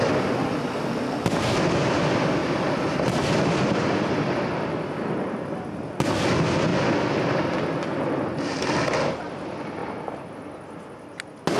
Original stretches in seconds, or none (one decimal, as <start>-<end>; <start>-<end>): 0.0-2.4; 3.3-9.8; 10.3-11.6